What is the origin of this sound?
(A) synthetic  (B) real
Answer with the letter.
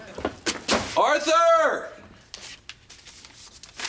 B